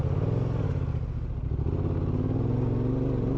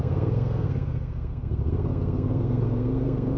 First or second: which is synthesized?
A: second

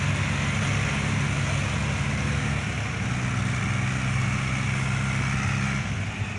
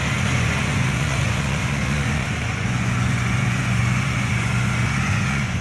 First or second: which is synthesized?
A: second